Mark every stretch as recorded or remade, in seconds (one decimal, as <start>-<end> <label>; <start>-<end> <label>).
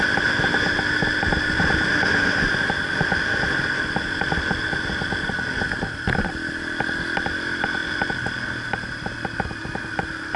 0.0-10.4 recorded